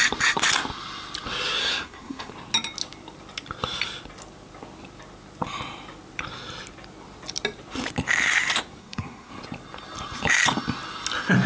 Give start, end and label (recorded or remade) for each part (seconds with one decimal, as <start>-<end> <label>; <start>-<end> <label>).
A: 0.0-1.6 recorded; 1.6-2.3 remade; 2.3-8.8 recorded; 8.8-9.3 remade; 9.3-11.5 recorded